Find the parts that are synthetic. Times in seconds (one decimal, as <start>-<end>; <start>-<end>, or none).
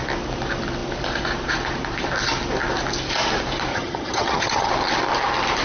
3.7-4.7